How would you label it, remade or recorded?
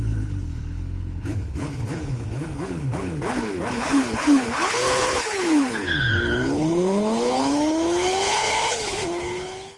remade